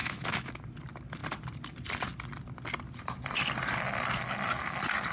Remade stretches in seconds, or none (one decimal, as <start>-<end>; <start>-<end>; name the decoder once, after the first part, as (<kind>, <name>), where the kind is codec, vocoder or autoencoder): 0.0-0.6 (autoencoder, DAC-VAE)